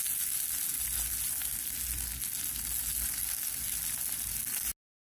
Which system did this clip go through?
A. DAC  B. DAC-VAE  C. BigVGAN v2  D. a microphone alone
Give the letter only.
D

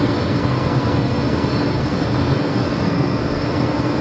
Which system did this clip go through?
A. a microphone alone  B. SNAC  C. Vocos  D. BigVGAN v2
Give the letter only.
B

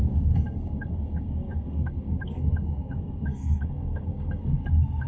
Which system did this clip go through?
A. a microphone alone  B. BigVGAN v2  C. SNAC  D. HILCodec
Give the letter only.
C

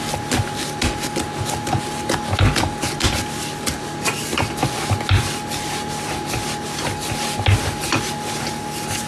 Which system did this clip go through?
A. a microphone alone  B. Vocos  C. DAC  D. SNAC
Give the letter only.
A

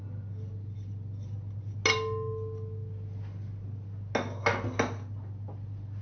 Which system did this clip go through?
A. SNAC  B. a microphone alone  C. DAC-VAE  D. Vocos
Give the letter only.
B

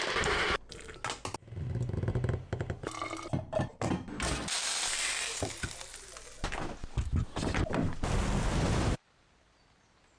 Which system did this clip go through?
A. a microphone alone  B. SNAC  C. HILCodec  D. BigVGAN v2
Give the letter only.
A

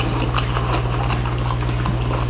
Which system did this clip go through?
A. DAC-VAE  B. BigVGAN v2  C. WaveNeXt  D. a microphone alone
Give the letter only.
D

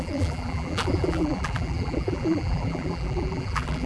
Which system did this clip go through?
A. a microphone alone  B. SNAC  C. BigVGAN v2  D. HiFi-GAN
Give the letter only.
C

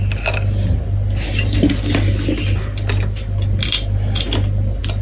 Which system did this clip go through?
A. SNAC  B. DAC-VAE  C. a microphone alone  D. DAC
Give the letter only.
C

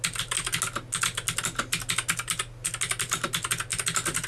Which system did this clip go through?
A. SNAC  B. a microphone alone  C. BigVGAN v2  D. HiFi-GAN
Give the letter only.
B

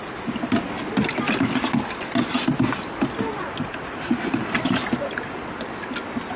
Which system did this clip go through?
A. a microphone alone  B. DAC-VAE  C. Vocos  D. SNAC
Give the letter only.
A